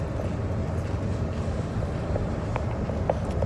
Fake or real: real